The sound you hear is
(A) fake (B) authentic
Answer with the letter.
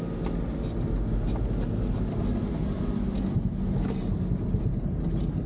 B